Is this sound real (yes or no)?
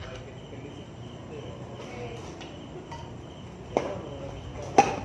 yes